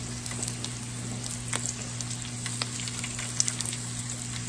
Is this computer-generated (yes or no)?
no